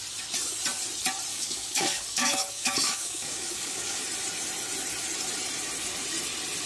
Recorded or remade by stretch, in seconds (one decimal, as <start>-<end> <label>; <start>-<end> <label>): 0.0-1.3 recorded; 1.3-4.0 remade; 4.0-6.7 recorded